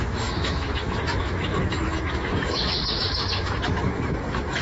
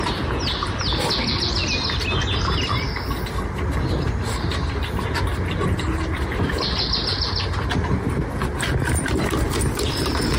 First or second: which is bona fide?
second